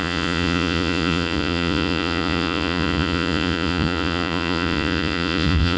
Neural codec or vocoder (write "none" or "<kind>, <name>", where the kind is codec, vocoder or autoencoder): vocoder, Vocos